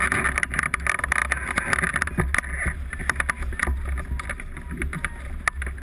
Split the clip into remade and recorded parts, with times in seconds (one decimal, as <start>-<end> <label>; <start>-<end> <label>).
0.0-5.8 recorded